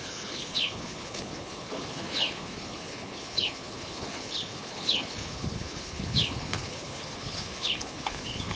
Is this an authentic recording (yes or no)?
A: no